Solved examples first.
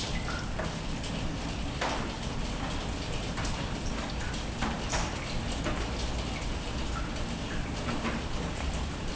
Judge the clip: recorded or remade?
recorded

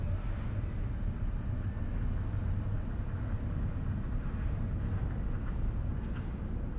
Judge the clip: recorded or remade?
recorded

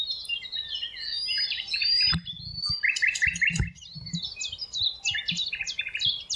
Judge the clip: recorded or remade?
recorded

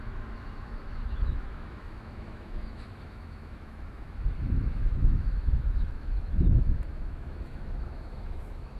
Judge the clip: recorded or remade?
remade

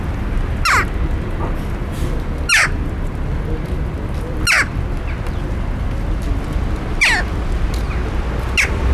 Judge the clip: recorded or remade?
recorded